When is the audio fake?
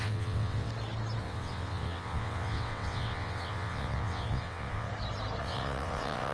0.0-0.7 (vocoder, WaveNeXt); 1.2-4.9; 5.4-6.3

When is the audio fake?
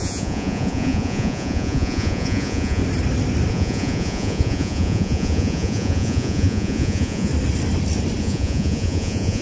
0.0-2.8 (vocoder, Vocos); 3.5-7.3; 8.2-9.4